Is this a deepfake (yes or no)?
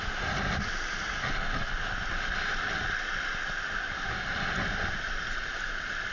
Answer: no